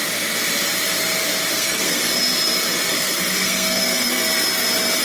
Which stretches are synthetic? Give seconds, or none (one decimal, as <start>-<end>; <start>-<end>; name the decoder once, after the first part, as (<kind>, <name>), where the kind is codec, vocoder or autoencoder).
1.5-2.0 (codec, SNAC); 2.9-4.2